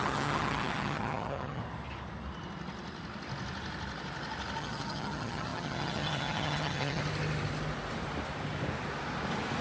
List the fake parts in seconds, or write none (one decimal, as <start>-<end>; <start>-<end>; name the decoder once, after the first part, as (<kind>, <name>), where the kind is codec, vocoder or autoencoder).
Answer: 0.0-1.6 (vocoder, HiFi-GAN); 4.6-7.0